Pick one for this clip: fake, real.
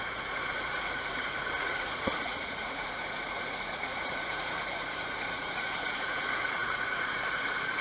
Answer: fake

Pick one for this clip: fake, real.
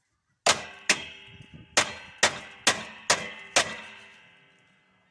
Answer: real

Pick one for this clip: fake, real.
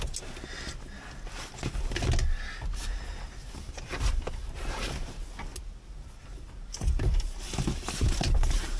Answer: real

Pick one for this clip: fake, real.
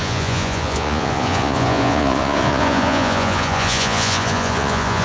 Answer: fake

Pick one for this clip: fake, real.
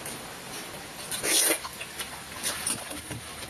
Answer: real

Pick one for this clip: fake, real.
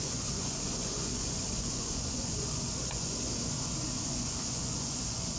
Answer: fake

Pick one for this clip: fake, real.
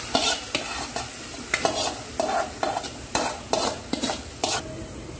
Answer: real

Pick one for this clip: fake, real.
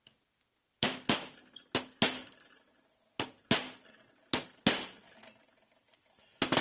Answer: real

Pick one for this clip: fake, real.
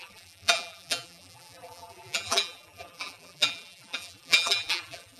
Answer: fake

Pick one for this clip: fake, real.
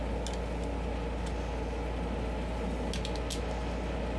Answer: real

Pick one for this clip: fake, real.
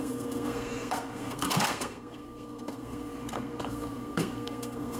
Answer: fake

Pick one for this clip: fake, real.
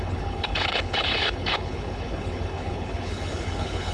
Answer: fake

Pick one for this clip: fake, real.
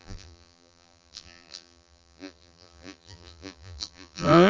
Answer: fake